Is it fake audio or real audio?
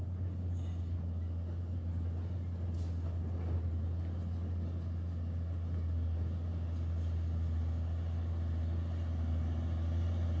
real